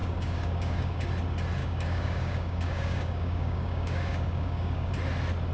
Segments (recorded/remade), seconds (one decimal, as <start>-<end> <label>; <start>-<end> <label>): 0.0-1.1 remade; 1.1-1.6 recorded; 1.6-4.9 remade; 4.9-5.5 recorded